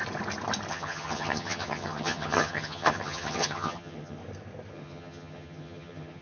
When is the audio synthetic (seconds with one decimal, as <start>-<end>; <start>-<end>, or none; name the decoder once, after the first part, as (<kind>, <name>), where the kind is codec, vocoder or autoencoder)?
0.7-4.2 (vocoder, HiFi-GAN); 4.7-6.2